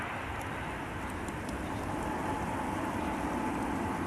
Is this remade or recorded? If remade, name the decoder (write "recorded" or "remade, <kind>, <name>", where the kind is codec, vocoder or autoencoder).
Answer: recorded